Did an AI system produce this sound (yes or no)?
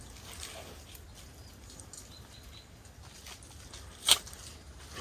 no